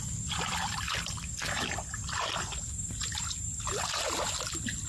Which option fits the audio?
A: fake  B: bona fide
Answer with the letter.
B